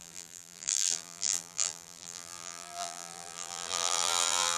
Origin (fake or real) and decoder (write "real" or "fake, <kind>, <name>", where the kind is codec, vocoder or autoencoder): fake, vocoder, BigVGAN v2